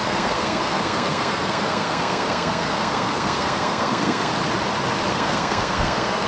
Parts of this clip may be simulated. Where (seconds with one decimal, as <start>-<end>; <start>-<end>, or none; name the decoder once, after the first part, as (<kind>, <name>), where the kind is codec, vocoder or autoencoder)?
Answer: 0.0-4.3 (codec, SNAC); 5.1-6.3